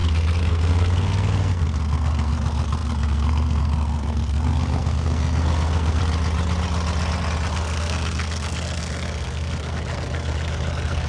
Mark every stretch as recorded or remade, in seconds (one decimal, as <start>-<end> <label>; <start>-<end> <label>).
0.0-6.0 remade; 6.0-7.5 recorded; 7.5-11.1 remade

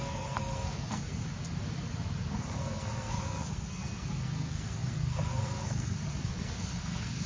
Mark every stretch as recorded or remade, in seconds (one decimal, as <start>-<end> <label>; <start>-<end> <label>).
0.0-1.2 remade; 1.2-2.3 recorded; 2.3-7.3 remade

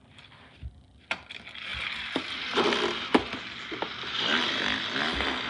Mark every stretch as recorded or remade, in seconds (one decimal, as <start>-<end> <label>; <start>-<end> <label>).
0.0-5.5 recorded

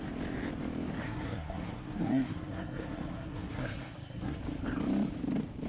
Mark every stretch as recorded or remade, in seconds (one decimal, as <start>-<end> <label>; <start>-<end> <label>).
0.0-1.0 recorded; 1.0-4.4 remade; 4.4-5.7 recorded

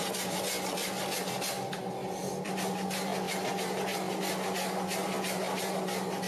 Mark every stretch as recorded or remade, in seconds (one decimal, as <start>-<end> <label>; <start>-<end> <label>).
0.0-6.3 recorded

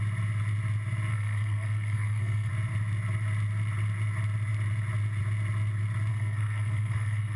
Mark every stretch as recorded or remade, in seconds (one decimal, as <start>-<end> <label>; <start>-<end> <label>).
0.0-1.1 recorded; 1.1-2.5 remade; 2.5-6.1 recorded; 6.1-7.4 remade

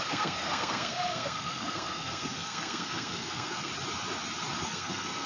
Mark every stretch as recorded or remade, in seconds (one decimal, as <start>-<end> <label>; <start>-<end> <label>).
0.0-3.7 remade; 3.7-4.6 recorded; 4.6-5.3 remade